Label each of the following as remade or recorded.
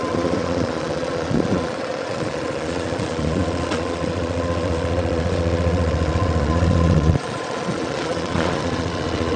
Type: remade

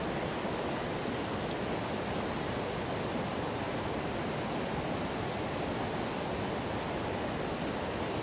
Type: recorded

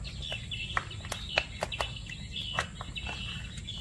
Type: recorded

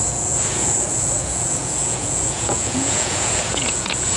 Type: remade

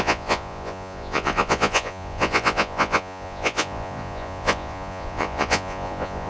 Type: remade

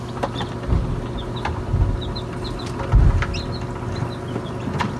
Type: recorded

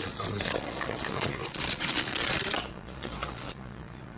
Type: remade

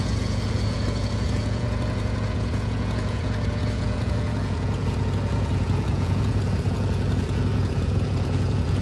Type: remade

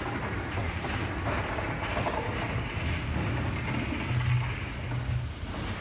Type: recorded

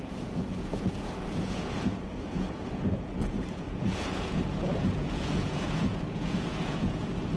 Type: remade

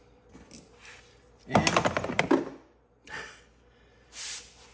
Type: recorded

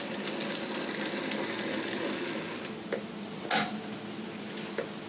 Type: recorded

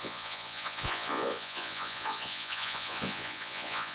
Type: remade